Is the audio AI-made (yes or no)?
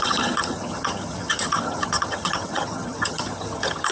yes